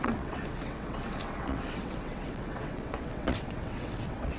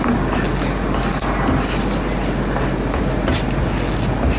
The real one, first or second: second